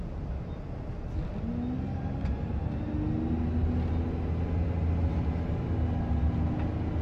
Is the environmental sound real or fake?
real